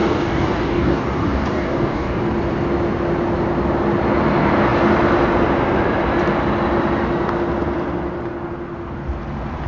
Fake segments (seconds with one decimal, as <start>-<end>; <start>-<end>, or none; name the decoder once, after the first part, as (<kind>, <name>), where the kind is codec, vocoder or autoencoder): 0.0-2.2 (codec, DAC)